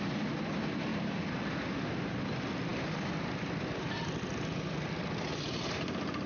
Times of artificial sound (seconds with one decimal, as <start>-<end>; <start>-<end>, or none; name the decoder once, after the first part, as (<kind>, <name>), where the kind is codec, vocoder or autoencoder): none